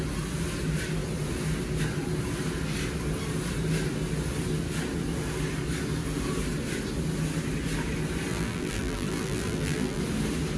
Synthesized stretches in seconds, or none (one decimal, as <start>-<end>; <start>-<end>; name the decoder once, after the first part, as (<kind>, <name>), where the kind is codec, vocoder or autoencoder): 8.3-10.0 (vocoder, BigVGAN v2)